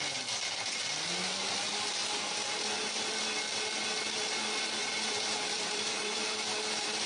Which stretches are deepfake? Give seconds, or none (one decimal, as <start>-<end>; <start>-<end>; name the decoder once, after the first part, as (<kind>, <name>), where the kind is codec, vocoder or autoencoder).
4.8-6.4 (vocoder, BigVGAN v2)